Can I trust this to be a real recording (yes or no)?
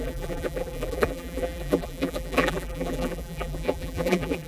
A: no